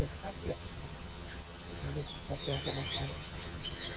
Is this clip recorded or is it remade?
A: remade